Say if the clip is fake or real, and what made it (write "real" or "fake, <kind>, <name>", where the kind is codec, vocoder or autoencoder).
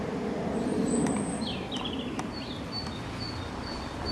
fake, vocoder, BigVGAN v2